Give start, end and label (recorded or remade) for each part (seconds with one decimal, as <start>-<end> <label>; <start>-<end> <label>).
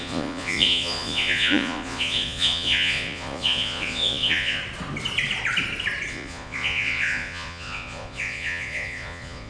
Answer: 0.0-4.6 remade; 4.6-6.1 recorded; 6.1-9.5 remade